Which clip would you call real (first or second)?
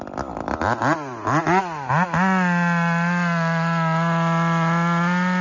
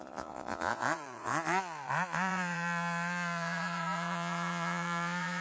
first